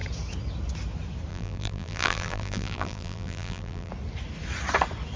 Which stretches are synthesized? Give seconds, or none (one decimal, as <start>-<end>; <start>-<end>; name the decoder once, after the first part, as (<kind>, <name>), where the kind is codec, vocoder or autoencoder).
1.3-3.9 (vocoder, BigVGAN v2)